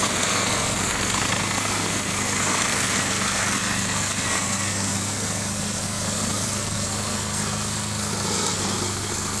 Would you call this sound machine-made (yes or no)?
yes